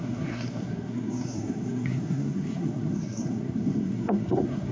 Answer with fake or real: fake